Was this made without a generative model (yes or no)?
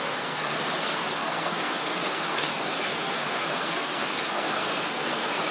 no